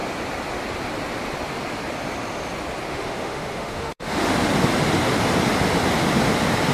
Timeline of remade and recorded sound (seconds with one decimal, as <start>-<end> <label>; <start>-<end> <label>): 0.0-2.9 recorded; 2.9-4.3 remade; 4.3-6.7 recorded